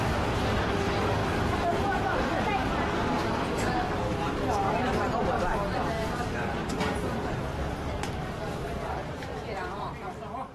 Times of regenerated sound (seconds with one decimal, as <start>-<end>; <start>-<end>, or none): 0.0-10.5